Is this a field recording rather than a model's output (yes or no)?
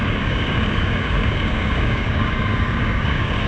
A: no